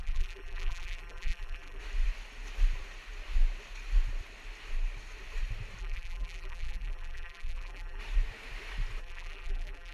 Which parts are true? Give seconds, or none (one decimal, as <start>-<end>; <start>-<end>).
1.8-5.8; 8.0-9.0